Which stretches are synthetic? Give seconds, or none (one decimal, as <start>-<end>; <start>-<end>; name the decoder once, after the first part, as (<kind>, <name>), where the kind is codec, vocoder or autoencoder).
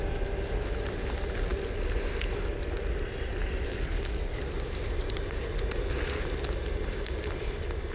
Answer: 3.7-4.4 (codec, DAC)